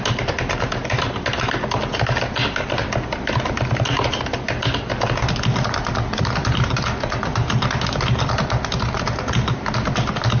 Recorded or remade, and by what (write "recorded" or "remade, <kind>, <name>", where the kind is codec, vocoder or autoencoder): recorded